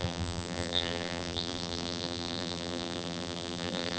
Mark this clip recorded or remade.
remade